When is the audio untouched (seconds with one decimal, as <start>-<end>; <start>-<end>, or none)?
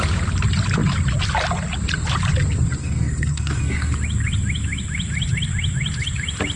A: 0.0-2.8; 3.9-6.6